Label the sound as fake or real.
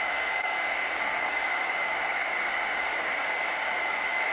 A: fake